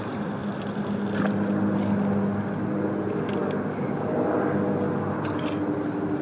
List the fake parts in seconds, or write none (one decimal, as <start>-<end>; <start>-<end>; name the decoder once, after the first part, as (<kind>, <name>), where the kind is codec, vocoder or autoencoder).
none